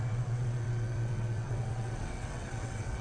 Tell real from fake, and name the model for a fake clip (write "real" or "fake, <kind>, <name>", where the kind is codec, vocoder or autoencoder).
fake, vocoder, WaveNeXt